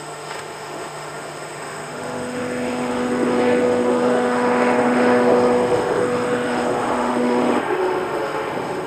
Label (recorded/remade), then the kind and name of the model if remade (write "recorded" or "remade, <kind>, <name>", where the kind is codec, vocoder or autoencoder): remade, autoencoder, DAC-VAE